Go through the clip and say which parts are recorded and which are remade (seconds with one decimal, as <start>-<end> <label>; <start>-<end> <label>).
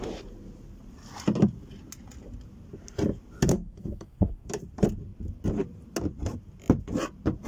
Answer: 0.0-3.5 recorded; 3.5-4.5 remade; 4.5-7.5 recorded